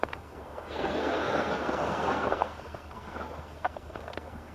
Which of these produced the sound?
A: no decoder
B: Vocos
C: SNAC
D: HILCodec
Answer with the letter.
C